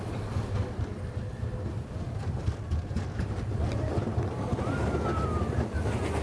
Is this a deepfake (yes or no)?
no